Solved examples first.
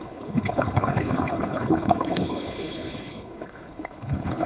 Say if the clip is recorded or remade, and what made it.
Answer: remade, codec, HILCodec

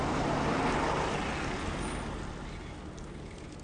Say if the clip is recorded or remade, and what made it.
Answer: recorded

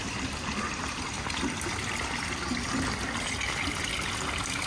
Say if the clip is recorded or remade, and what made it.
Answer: recorded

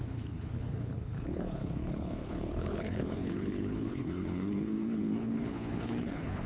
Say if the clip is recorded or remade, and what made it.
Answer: remade, codec, HILCodec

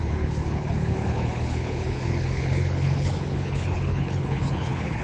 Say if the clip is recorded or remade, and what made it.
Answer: remade, codec, HILCodec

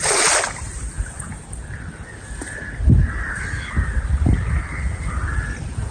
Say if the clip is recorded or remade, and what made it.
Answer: recorded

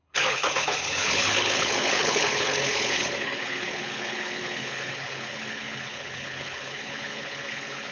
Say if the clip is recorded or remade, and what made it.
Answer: remade, codec, HILCodec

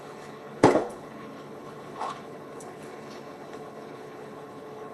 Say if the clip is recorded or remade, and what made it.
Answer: remade, codec, HILCodec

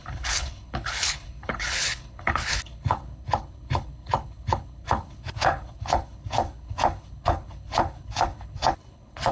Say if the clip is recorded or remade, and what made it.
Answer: remade, codec, HILCodec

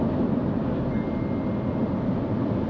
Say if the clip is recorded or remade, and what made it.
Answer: recorded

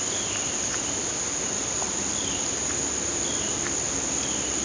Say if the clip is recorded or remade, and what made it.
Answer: recorded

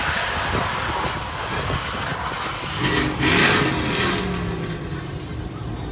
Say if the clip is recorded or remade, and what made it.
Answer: recorded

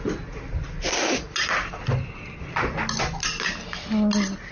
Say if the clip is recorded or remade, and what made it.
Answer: recorded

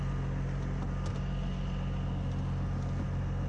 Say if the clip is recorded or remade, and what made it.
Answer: recorded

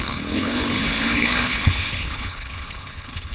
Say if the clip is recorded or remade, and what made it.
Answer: remade, codec, HILCodec